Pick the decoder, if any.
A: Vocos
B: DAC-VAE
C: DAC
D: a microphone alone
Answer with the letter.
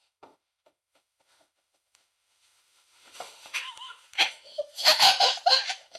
B